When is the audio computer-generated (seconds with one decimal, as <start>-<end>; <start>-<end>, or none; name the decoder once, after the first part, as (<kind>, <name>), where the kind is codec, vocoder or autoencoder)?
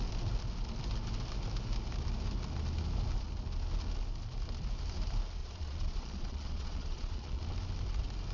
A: 5.4-7.4 (vocoder, Vocos)